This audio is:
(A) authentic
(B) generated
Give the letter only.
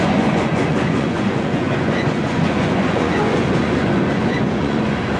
B